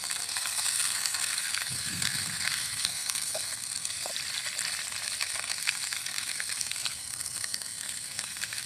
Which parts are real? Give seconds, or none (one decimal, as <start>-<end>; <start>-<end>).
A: 4.1-5.2